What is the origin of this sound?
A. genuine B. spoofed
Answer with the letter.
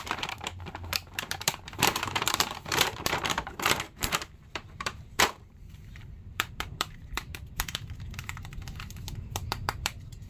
B